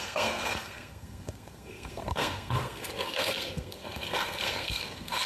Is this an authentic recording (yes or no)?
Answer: no